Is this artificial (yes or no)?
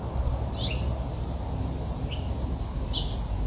no